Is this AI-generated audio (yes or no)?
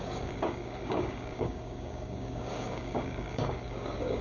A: yes